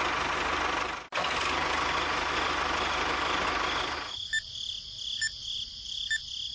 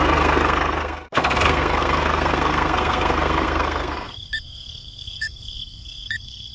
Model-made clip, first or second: second